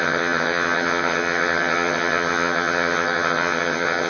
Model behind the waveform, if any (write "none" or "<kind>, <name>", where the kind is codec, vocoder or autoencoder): vocoder, HiFi-GAN